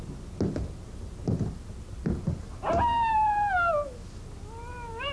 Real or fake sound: real